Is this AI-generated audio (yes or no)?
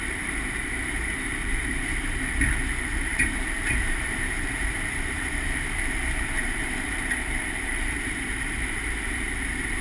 yes